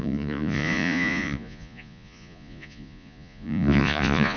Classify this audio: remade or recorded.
remade